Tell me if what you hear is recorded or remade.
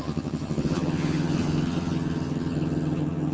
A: remade